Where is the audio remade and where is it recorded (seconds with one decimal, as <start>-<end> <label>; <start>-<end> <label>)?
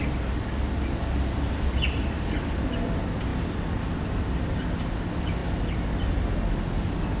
0.0-7.2 recorded